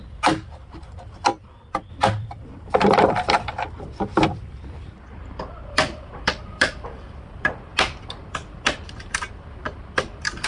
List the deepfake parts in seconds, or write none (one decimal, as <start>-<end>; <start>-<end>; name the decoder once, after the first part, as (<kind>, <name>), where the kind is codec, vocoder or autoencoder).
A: 0.0-7.7 (vocoder, BigVGAN v2); 8.3-10.5